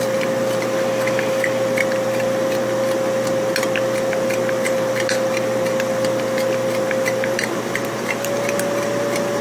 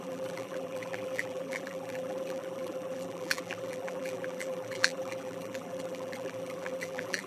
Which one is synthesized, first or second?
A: second